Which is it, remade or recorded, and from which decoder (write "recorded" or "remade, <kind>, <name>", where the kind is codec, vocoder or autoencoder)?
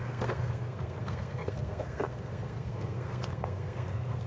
remade, codec, SNAC